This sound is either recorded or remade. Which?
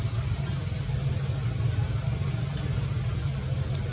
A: recorded